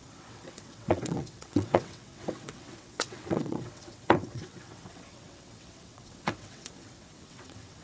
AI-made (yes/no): yes